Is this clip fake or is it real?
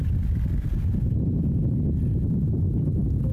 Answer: real